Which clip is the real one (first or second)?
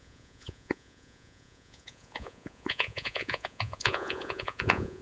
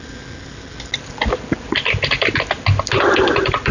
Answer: second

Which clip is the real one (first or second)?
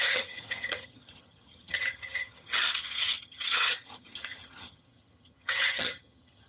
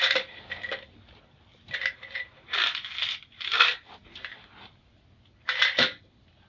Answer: second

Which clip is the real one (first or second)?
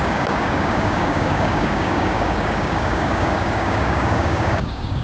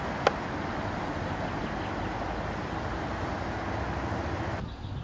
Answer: second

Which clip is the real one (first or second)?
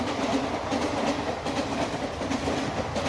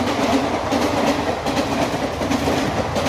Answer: second